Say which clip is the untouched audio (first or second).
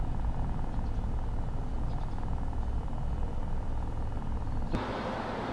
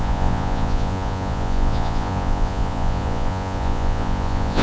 first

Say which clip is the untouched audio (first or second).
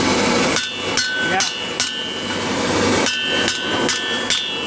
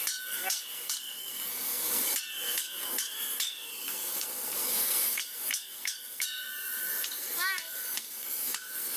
first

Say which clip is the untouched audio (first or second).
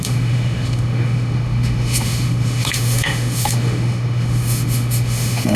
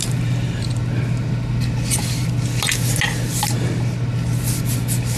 second